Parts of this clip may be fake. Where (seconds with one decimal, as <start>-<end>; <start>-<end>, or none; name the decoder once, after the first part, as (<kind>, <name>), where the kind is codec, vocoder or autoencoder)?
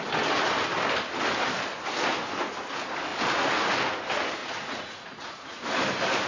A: 4.4-5.6 (vocoder, Vocos)